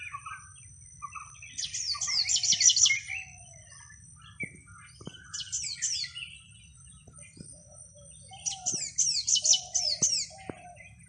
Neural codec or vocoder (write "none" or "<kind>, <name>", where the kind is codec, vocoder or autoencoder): none